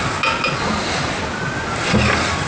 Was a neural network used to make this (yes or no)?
no